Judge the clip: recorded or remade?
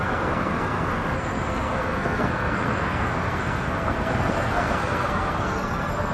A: remade